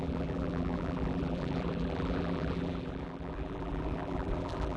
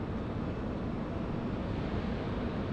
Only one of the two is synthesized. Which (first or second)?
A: first